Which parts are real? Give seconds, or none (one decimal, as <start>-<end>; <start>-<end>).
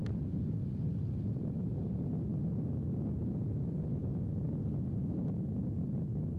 0.0-6.4